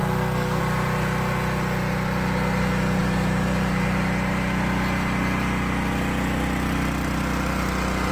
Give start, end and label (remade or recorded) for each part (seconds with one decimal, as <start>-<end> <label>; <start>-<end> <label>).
0.0-0.6 remade; 0.6-8.1 recorded